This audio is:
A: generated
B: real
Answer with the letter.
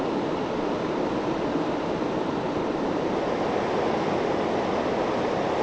B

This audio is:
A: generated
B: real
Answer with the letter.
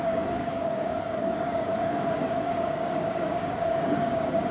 A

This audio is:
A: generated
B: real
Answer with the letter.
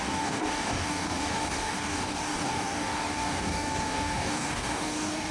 A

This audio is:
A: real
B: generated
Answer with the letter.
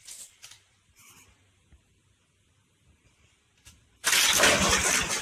A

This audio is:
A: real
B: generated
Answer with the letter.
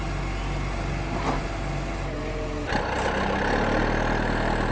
A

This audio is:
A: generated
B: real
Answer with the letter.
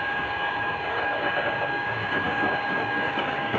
A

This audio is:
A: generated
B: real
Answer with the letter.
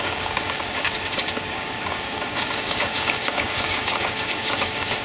A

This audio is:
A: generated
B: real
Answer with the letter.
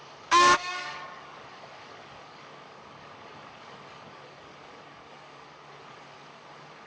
A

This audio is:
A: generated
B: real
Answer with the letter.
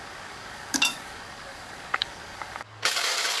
A